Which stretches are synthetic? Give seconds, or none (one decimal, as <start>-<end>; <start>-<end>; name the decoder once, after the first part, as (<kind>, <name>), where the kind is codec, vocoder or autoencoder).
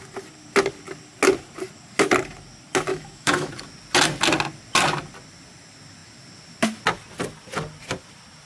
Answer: 2.9-3.5 (autoencoder, DAC-VAE)